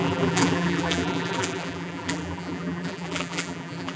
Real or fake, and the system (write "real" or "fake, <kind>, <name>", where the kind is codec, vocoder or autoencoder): fake, vocoder, BigVGAN v2